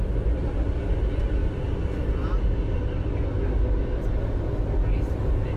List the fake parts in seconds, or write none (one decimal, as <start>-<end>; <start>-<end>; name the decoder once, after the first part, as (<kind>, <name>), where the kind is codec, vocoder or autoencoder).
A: none